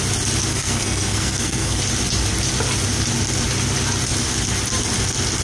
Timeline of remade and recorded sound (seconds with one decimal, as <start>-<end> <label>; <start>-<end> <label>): 0.0-0.5 recorded; 0.5-1.8 remade; 1.8-5.4 recorded